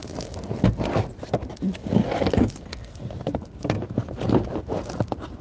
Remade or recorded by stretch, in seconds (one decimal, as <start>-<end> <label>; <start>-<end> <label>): 0.0-2.0 recorded; 2.0-3.0 remade; 3.0-5.4 recorded